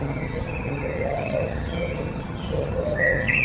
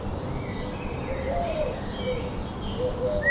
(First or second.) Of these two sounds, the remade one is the first